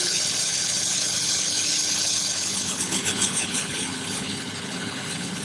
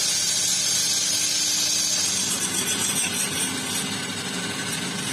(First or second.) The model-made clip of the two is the first